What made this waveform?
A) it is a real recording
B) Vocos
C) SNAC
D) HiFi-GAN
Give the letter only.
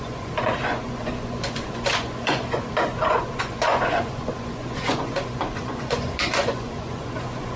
B